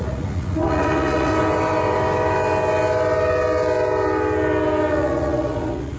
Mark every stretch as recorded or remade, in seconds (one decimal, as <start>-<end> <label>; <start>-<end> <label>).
0.0-1.3 remade; 1.3-4.9 recorded; 4.9-6.0 remade